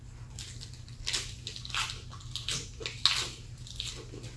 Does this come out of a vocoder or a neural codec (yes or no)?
no